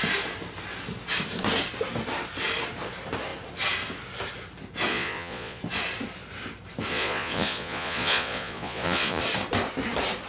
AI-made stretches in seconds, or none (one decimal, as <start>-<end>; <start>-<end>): 4.9-5.6; 6.9-9.2